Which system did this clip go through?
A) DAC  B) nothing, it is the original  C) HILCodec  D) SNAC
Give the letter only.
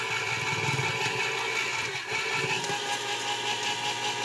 B